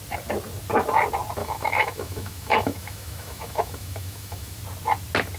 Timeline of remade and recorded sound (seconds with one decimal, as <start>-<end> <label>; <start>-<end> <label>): 0.0-1.4 recorded; 1.4-4.6 remade; 4.6-5.4 recorded